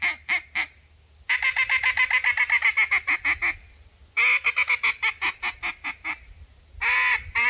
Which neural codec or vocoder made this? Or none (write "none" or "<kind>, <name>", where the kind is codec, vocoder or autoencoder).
none